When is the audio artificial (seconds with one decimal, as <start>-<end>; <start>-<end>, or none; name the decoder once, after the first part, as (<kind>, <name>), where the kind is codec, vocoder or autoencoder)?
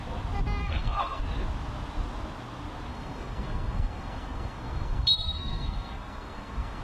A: 0.6-1.2 (codec, SNAC); 2.9-6.8